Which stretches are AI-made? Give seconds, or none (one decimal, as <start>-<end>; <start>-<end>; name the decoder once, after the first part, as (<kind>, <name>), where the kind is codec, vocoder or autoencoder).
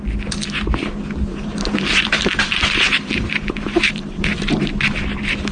1.3-4.6 (vocoder, BigVGAN v2)